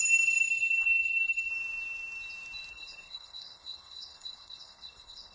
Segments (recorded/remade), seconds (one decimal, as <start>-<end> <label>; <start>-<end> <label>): 0.0-1.5 remade; 1.5-2.7 recorded; 2.7-5.3 remade